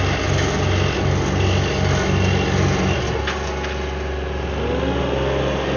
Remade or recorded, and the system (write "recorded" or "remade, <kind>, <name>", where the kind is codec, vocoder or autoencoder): recorded